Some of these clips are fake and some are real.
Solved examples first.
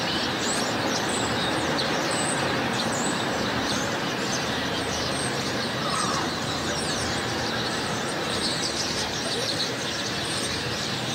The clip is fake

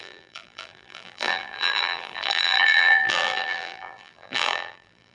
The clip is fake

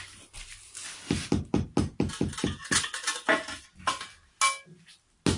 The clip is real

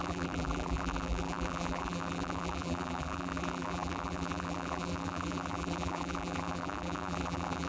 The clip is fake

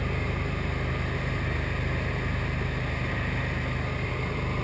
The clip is real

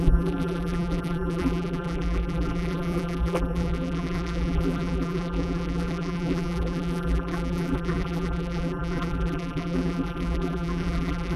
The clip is fake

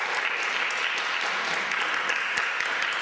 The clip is real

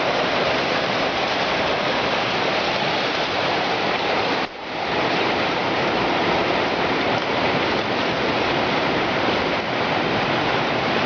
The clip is fake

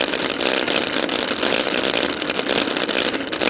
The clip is real